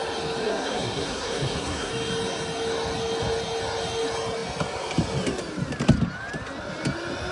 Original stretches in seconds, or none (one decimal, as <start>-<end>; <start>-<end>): 0.0-0.4; 1.9-7.3